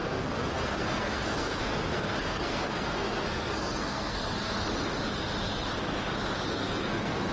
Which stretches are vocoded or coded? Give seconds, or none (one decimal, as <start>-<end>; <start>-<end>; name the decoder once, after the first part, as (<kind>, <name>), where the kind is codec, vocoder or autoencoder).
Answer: 0.0-4.5 (codec, SNAC); 6.5-7.3